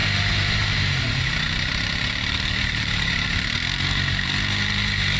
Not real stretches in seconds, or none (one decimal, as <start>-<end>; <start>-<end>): 0.0-5.2